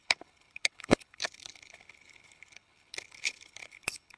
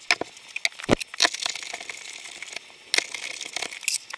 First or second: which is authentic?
second